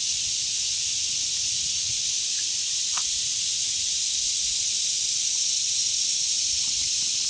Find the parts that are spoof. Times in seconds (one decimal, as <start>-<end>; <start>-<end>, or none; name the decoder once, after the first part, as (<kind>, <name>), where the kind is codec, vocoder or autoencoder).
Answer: 0.5-4.0 (vocoder, Vocos)

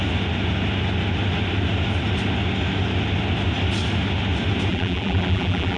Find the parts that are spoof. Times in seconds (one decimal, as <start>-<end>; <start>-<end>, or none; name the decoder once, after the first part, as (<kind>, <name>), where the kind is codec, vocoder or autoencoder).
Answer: 4.7-5.8 (vocoder, BigVGAN v2)

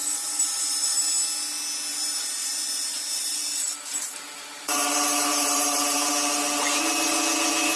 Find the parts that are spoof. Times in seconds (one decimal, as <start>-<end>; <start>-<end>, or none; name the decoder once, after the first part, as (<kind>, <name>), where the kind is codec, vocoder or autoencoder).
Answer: 0.0-1.0 (vocoder, BigVGAN v2); 1.9-6.1